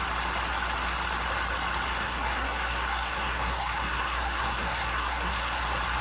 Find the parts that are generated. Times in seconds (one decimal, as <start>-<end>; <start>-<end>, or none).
2.0-5.6